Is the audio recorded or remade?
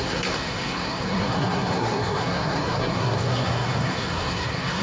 remade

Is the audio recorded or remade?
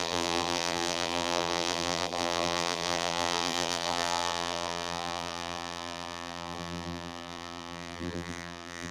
remade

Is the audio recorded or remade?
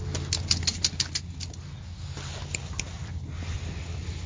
recorded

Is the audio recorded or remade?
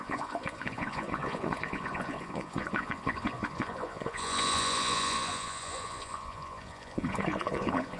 remade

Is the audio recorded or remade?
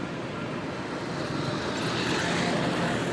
recorded